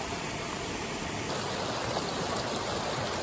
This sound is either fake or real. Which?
real